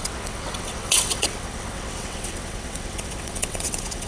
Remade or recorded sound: remade